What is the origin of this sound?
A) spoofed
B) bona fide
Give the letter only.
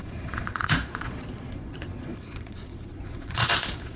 A